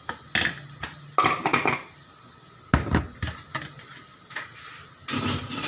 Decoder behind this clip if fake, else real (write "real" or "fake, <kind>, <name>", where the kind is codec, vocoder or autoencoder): real